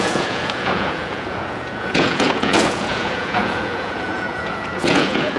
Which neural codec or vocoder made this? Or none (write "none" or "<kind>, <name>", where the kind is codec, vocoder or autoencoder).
vocoder, Vocos